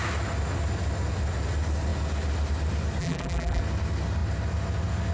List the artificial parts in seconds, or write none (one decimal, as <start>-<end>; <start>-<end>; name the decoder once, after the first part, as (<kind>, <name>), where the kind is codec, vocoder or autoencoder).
3.0-3.6 (vocoder, BigVGAN v2)